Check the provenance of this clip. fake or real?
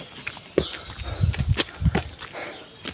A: real